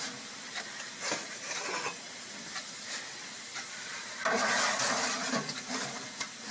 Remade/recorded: remade